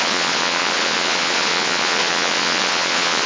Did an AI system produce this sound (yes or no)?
yes